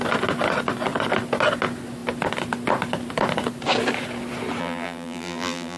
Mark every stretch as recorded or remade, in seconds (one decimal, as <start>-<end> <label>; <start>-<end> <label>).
0.0-4.6 recorded; 4.6-5.8 remade